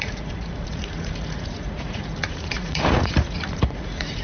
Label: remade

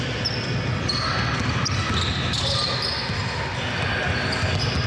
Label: recorded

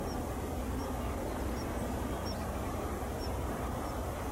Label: recorded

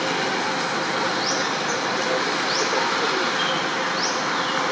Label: recorded